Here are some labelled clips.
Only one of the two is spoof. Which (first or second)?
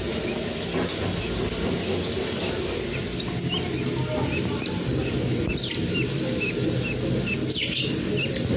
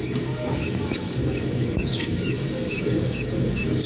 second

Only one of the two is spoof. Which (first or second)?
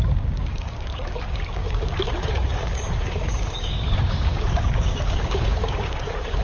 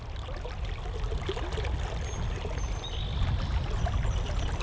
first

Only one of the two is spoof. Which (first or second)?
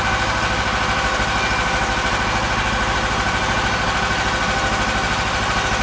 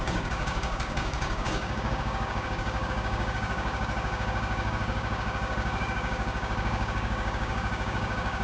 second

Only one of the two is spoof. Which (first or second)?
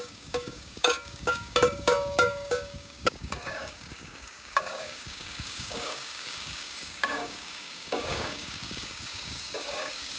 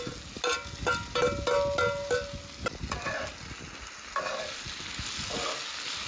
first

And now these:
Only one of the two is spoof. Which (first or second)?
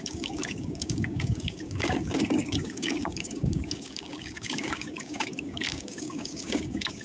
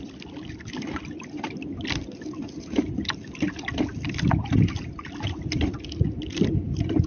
first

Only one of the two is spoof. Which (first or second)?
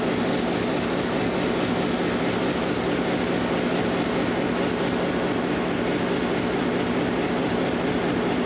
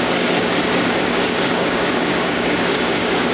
second